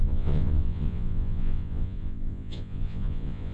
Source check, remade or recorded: remade